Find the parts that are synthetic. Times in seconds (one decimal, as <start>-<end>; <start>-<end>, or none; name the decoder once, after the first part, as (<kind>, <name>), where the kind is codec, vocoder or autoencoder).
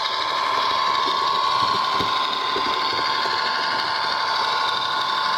none